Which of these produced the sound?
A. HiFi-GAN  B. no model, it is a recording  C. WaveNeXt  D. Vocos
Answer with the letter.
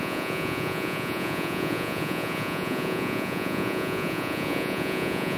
D